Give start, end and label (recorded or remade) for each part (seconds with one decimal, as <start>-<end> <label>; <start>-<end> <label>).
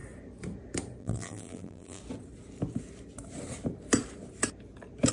0.0-1.0 recorded; 1.0-2.0 remade; 2.0-5.1 recorded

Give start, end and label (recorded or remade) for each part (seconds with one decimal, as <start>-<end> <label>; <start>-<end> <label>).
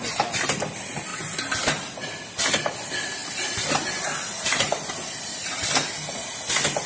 0.0-3.2 recorded; 3.2-6.1 remade; 6.1-6.9 recorded